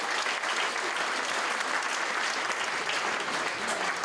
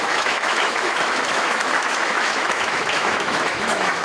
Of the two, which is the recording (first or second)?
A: first